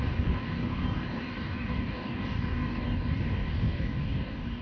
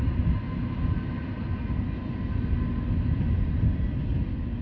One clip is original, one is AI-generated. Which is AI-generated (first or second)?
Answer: first